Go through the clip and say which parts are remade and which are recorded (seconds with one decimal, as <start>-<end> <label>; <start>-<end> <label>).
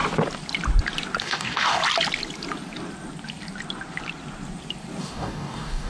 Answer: 0.0-1.2 recorded; 1.2-1.8 remade; 1.8-5.0 recorded; 5.0-5.9 remade